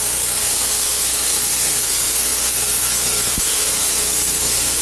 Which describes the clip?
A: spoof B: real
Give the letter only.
A